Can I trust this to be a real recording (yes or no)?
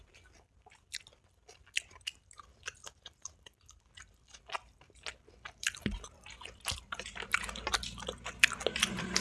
yes